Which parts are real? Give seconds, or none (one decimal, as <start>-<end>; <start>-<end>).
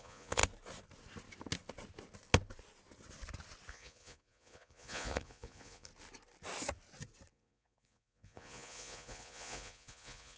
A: 0.4-3.7; 5.9-7.3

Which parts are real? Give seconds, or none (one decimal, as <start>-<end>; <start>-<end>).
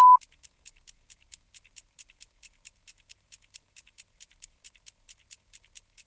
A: 0.0-6.1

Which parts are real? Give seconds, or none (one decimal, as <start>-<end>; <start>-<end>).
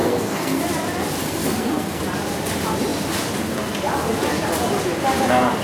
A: 0.6-1.2; 2.0-5.6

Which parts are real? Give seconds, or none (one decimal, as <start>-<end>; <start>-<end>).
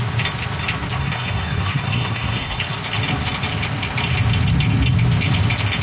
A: 0.0-1.0; 2.6-5.8